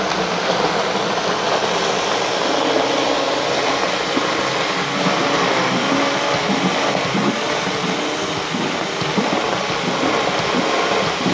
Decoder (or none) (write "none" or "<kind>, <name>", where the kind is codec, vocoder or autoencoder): none